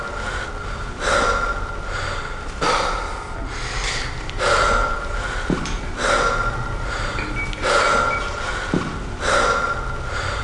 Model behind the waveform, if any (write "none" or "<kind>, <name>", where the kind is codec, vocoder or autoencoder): none